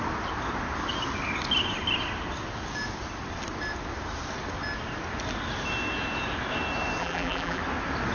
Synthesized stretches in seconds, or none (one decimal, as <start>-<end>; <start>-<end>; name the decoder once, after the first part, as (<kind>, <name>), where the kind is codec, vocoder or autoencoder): 7.0-7.6 (vocoder, BigVGAN v2)